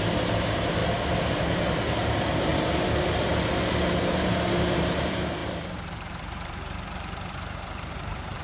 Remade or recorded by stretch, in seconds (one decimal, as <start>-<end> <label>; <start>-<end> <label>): 0.0-0.8 remade; 0.8-1.3 recorded; 1.3-2.5 remade; 2.5-4.0 recorded; 4.0-8.4 remade